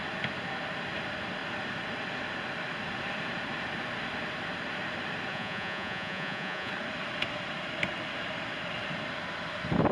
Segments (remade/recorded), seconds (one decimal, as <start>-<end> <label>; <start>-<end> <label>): 0.0-5.3 recorded; 5.3-6.7 remade; 6.7-9.9 recorded